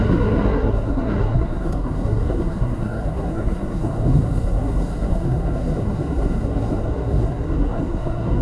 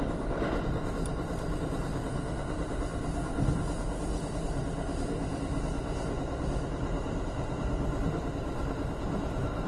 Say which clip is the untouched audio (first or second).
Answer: second